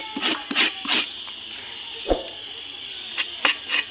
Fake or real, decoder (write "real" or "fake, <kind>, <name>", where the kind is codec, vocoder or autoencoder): real